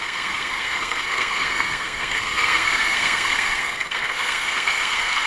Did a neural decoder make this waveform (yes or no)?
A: yes